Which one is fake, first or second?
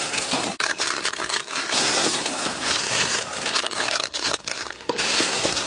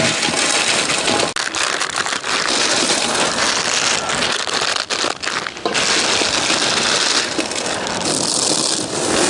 first